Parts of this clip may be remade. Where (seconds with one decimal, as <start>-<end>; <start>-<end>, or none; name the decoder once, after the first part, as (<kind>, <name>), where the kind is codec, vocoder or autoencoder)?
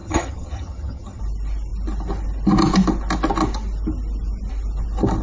0.0-1.2 (vocoder, HiFi-GAN)